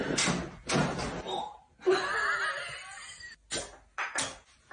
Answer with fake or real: real